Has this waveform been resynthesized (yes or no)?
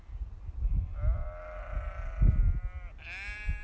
no